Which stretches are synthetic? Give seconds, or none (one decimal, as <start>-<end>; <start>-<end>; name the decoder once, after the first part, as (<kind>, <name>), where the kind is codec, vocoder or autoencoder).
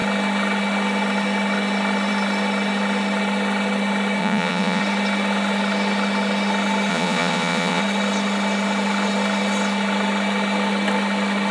4.2-4.8 (vocoder, Vocos); 6.9-7.8